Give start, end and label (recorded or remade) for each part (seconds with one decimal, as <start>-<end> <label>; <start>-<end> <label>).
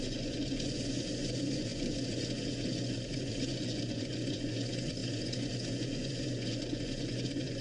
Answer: 0.0-7.6 remade